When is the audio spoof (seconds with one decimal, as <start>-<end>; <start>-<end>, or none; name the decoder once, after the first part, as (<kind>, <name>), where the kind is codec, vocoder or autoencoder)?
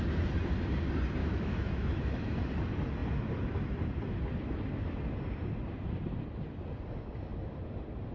1.2-2.5 (autoencoder, DAC-VAE)